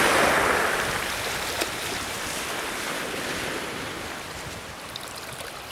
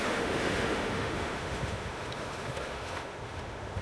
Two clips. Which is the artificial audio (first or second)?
second